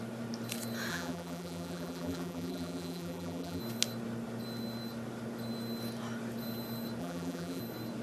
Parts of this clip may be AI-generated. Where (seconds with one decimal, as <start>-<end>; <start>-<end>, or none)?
0.9-3.6; 7.0-7.6